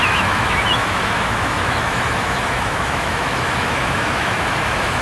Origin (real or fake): fake